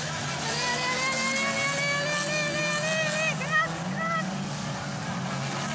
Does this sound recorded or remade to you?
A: recorded